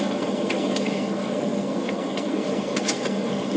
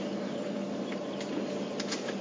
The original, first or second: second